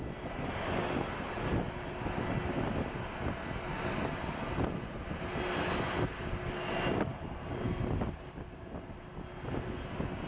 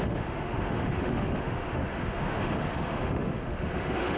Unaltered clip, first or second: first